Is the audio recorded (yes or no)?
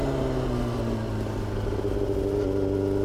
yes